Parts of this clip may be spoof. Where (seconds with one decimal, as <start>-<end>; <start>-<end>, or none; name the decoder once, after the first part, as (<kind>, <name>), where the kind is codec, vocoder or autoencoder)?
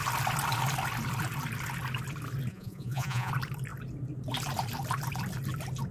2.5-3.3 (vocoder, Vocos)